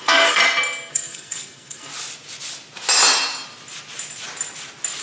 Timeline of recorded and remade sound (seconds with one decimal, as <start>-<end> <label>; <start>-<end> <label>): 0.0-0.4 remade; 0.4-0.9 recorded; 0.9-1.9 remade; 1.9-5.0 recorded